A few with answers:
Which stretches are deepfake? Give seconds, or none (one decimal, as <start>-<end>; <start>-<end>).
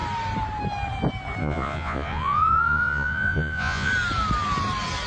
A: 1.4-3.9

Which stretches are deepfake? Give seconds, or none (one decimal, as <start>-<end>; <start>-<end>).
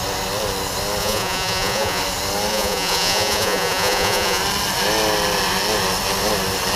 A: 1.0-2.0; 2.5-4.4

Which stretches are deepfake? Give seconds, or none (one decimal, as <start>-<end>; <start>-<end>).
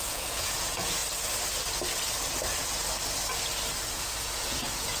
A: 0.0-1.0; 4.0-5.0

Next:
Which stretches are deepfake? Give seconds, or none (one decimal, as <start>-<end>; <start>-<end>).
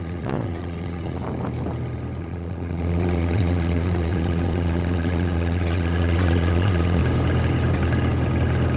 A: 0.0-1.2; 2.2-7.0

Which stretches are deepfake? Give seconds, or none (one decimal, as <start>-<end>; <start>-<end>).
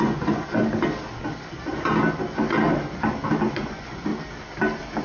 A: 0.0-0.6; 3.5-4.1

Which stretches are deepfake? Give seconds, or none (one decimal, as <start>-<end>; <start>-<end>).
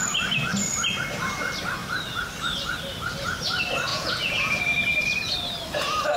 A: 3.9-4.6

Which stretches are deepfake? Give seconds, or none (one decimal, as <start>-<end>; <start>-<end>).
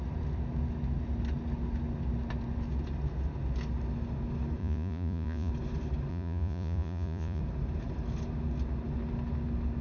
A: 4.6-5.5; 6.1-7.4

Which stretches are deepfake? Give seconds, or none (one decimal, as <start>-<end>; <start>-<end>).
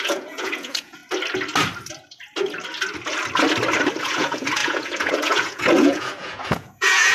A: 0.0-1.0; 4.0-7.1